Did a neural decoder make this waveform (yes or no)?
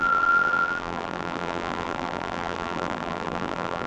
yes